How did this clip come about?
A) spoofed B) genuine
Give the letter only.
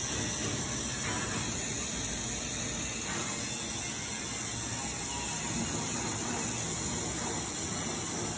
B